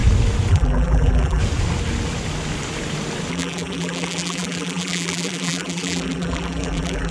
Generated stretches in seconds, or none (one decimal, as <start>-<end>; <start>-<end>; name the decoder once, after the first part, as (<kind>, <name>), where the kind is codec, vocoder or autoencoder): 0.5-1.4 (vocoder, BigVGAN v2); 3.3-7.1